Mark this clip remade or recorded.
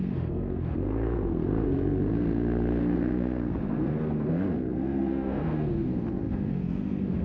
remade